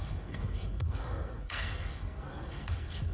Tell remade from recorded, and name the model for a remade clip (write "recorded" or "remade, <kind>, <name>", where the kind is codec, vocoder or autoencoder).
remade, codec, SNAC